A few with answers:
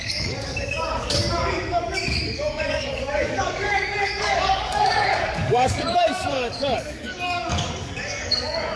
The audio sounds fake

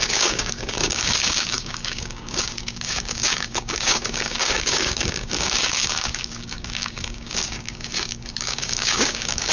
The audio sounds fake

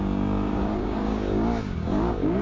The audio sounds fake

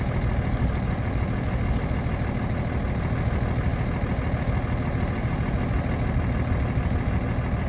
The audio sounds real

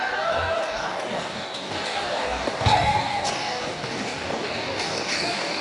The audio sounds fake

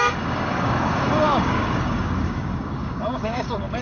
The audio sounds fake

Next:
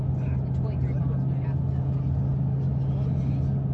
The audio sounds real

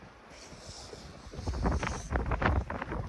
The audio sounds real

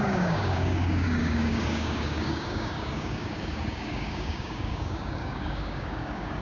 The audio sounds fake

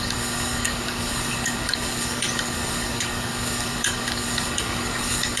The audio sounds fake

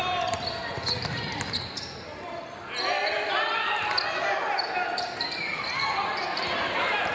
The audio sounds real